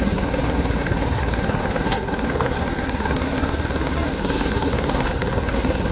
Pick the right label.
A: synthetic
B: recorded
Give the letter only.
A